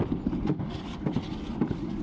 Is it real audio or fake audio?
real